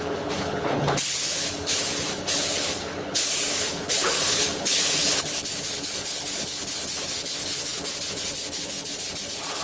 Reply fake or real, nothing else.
fake